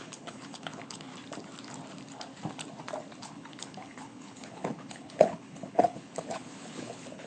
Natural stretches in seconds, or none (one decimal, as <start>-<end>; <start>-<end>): 1.1-3.2

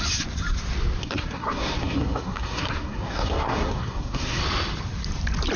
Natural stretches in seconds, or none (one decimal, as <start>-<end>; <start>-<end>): 0.0-1.0; 4.4-5.6

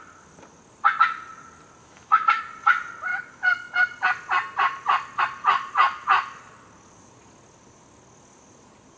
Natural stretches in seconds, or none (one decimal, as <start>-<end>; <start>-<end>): 0.0-1.8; 2.4-9.0

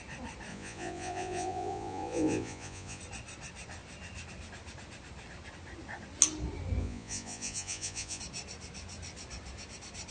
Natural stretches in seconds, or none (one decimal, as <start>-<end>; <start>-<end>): 0.0-0.5; 3.0-6.8; 8.2-10.1

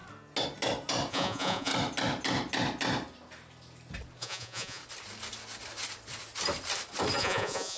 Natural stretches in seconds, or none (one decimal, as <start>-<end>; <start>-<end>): 0.0-1.1; 1.7-4.2; 4.8-7.2